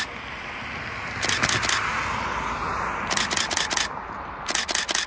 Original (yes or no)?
yes